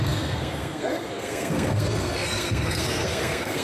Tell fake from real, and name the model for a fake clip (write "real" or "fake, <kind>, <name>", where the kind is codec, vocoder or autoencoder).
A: fake, codec, SNAC